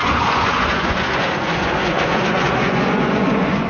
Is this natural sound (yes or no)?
no